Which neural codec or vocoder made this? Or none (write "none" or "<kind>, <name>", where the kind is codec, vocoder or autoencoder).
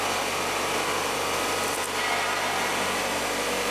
none